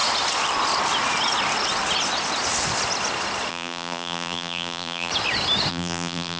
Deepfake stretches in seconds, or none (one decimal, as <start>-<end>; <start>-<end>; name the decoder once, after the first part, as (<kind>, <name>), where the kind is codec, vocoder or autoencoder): 3.5-5.1 (vocoder, BigVGAN v2); 5.7-6.4